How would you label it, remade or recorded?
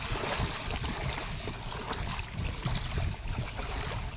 recorded